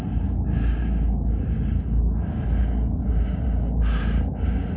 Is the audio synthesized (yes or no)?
no